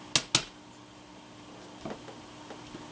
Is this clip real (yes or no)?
yes